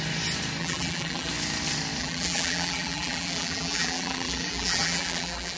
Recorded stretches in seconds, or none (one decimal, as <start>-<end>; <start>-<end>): 0.0-0.6; 1.3-2.0